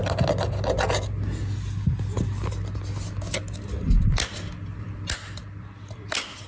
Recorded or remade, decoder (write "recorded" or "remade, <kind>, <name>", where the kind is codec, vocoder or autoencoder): recorded